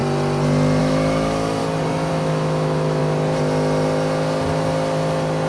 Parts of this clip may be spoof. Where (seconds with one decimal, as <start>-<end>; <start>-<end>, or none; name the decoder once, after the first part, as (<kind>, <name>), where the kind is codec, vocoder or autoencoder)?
0.8-1.6 (autoencoder, DAC-VAE); 2.1-3.0

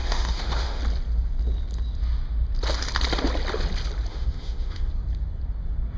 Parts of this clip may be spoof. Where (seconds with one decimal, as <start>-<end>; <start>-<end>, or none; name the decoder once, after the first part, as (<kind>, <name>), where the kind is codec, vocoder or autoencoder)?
0.0-0.8 (autoencoder, DAC-VAE); 4.1-4.9

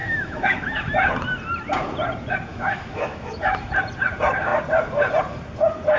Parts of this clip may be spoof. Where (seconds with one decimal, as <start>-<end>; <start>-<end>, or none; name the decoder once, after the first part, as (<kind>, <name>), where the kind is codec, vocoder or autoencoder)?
0.0-1.1 (autoencoder, DAC-VAE); 2.5-3.7

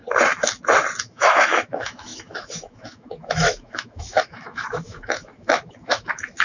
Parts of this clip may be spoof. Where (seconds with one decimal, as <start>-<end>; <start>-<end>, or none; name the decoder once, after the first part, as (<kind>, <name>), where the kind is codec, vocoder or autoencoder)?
1.0-6.4 (autoencoder, DAC-VAE)

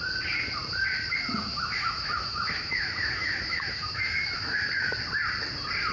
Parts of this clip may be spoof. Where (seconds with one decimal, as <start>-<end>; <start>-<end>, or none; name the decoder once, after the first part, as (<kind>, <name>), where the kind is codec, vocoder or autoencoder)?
1.5-5.0 (autoencoder, DAC-VAE)

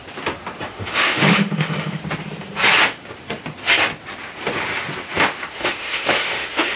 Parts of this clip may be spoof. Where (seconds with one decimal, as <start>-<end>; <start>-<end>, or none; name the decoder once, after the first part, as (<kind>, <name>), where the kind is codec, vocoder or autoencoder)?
0.7-2.0 (autoencoder, DAC-VAE); 5.5-6.8